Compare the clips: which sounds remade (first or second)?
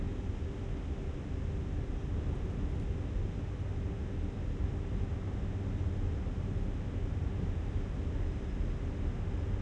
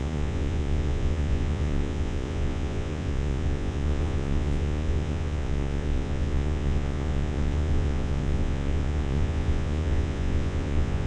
second